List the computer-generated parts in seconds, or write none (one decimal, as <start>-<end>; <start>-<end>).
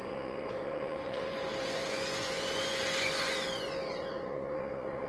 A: 0.0-5.1